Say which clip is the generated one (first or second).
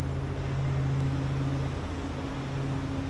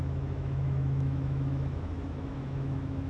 second